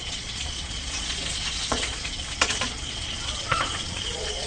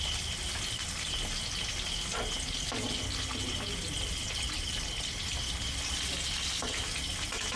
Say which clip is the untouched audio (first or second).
second